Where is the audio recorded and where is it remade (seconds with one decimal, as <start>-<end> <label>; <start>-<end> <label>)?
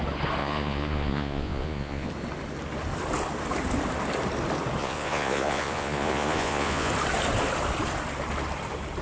0.0-0.4 recorded; 0.4-2.1 remade; 2.1-4.8 recorded; 4.8-6.9 remade; 6.9-9.0 recorded